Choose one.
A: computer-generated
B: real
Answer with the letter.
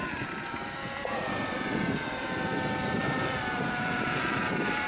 A